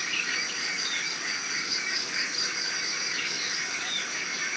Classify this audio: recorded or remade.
remade